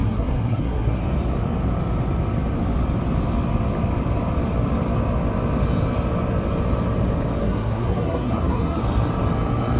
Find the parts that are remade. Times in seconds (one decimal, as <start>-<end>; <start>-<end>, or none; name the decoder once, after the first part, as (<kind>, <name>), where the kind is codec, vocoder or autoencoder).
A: 0.0-1.0 (codec, SNAC); 7.4-8.8